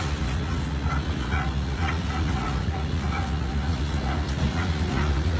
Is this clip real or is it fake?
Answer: fake